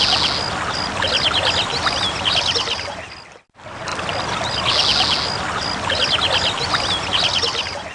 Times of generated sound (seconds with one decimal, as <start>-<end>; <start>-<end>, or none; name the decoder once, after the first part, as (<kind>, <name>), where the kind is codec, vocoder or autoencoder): none